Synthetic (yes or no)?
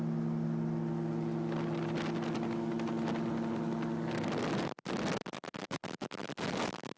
no